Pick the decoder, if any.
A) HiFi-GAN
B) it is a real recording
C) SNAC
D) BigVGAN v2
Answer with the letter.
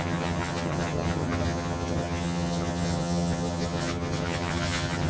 A